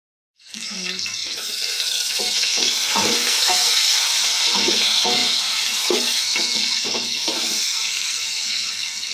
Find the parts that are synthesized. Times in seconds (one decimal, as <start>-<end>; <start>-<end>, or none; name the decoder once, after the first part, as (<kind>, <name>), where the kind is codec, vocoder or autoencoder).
0.0-9.1 (codec, SNAC)